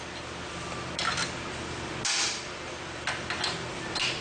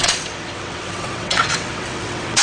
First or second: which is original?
first